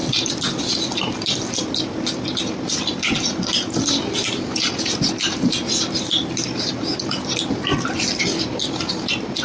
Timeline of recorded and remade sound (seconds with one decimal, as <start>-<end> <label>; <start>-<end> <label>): 0.0-9.4 recorded